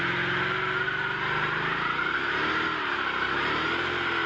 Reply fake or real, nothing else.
real